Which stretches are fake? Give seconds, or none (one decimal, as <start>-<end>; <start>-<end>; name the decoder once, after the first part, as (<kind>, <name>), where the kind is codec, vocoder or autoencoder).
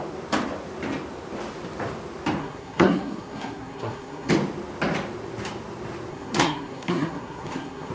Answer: 2.4-4.3 (codec, SNAC); 6.1-7.9